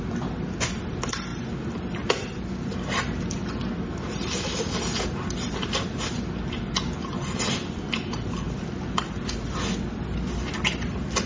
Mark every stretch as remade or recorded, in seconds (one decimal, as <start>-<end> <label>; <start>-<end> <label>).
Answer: 0.0-11.3 recorded